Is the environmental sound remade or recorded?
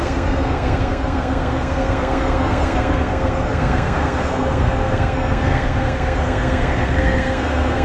remade